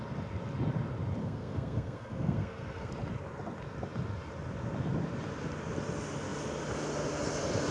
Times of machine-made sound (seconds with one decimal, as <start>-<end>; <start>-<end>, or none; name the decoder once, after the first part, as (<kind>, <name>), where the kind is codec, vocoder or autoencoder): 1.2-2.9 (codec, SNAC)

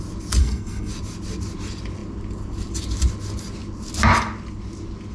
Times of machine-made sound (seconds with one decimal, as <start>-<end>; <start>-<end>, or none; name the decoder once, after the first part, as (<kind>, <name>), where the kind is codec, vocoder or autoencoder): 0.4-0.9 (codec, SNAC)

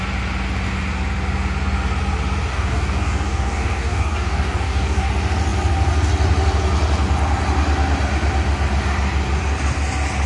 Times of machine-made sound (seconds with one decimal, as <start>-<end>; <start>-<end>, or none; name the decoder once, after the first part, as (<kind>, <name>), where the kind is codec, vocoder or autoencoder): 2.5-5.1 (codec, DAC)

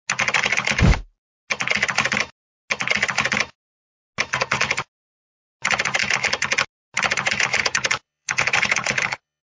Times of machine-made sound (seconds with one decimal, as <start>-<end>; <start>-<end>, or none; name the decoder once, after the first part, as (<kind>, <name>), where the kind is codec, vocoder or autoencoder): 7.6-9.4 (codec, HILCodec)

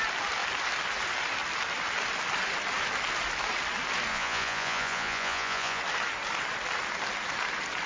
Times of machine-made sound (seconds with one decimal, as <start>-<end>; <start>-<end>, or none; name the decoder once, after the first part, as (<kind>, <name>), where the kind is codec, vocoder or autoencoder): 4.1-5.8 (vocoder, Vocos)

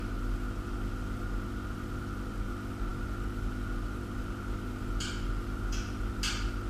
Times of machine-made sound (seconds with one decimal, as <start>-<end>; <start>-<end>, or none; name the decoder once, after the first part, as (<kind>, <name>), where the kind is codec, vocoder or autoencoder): none

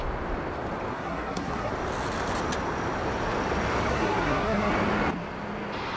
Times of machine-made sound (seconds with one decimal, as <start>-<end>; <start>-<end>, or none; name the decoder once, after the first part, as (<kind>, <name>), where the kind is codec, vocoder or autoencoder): 0.9-1.7 (codec, SNAC); 3.9-4.7